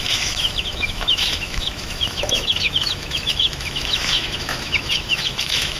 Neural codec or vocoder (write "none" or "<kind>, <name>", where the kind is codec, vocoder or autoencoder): autoencoder, DAC-VAE